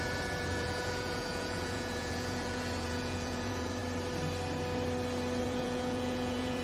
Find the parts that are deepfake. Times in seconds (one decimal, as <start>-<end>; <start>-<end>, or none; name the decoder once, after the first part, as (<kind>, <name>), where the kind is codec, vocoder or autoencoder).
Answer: 0.0-3.8 (vocoder, Vocos); 5.4-6.6

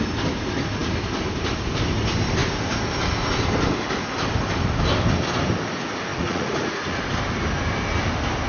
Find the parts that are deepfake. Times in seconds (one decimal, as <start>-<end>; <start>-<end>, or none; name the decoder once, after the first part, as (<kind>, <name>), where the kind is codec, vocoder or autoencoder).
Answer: 6.1-7.0 (vocoder, Vocos)